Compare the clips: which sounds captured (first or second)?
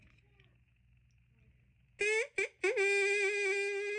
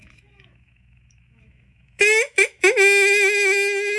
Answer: first